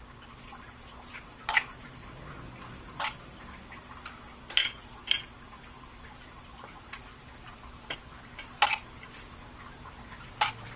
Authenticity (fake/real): real